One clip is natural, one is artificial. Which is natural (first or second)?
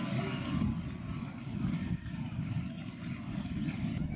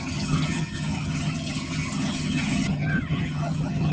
first